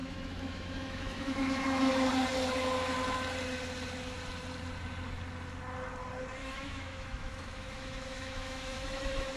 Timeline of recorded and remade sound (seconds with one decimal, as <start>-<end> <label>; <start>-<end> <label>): 0.0-1.9 remade; 1.9-6.4 recorded; 6.4-9.4 remade